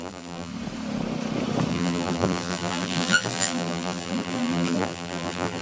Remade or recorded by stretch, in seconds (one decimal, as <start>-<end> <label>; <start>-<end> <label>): 0.0-0.5 remade; 0.5-1.7 recorded; 1.7-5.6 remade